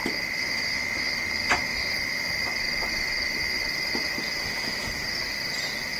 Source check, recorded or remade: recorded